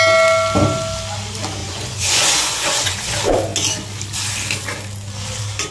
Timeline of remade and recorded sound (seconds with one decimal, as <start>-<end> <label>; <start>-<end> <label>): 0.0-1.6 recorded; 1.6-3.0 remade; 3.0-5.7 recorded